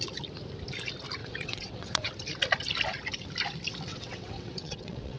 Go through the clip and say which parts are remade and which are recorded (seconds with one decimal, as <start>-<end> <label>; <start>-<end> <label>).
0.0-1.2 recorded; 1.2-2.1 remade; 2.1-3.9 recorded; 3.9-5.2 remade